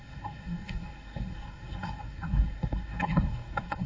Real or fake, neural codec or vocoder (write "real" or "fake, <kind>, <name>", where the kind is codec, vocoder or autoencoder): fake, codec, SNAC